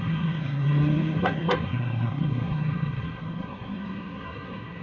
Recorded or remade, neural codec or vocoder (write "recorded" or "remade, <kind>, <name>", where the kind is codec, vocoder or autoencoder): remade, codec, SNAC